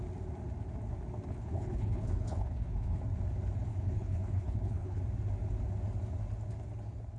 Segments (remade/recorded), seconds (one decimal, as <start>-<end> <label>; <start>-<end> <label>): 0.0-1.3 recorded; 1.3-3.0 remade; 3.0-3.7 recorded; 3.7-5.0 remade; 5.0-7.2 recorded